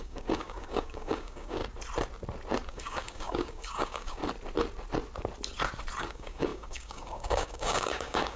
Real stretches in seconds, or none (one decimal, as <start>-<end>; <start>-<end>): 1.6-2.7; 4.2-6.0